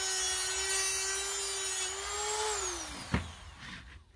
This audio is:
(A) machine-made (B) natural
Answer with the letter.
B